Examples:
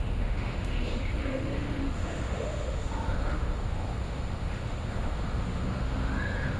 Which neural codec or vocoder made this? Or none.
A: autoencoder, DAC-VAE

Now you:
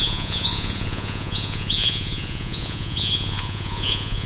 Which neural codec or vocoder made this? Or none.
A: vocoder, Vocos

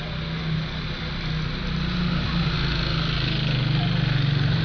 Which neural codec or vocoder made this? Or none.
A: none